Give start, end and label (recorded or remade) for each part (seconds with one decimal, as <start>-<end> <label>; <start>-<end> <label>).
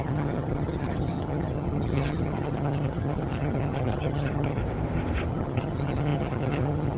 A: 0.0-4.6 remade; 4.6-5.3 recorded; 5.3-7.0 remade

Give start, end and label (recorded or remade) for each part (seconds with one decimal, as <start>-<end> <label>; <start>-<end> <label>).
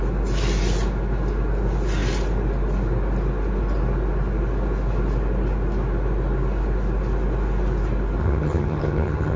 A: 0.0-8.2 recorded; 8.2-9.4 remade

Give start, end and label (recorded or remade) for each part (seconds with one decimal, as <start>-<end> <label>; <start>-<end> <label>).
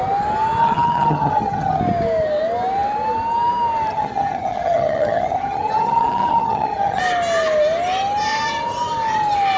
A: 0.0-0.6 recorded; 0.6-1.8 remade; 1.8-3.9 recorded; 3.9-7.0 remade; 7.0-9.6 recorded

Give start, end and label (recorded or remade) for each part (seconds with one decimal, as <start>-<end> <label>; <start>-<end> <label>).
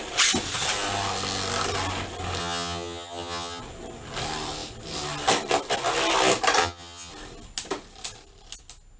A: 0.0-2.4 recorded; 2.4-3.6 remade; 3.6-6.6 recorded; 6.6-7.1 remade; 7.1-9.0 recorded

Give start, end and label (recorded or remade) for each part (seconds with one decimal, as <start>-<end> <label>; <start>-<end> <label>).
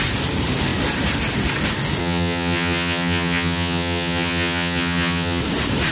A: 0.0-2.0 recorded; 2.0-5.4 remade; 5.4-5.9 recorded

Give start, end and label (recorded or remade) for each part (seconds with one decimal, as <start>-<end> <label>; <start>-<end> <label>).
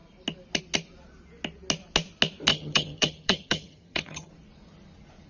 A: 0.0-2.5 recorded; 2.5-4.3 remade; 4.3-5.3 recorded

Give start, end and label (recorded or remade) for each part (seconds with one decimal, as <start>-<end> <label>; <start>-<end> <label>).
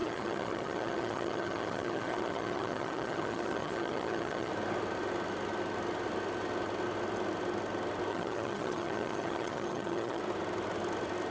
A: 0.0-4.5 remade; 4.5-8.1 recorded; 8.1-10.2 remade; 10.2-11.3 recorded